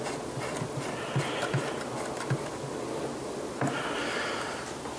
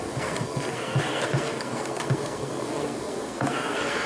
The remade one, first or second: second